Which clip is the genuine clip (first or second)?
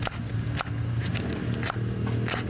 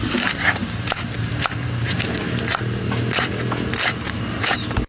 first